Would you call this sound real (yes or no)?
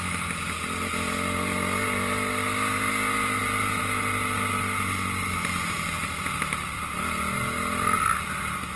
yes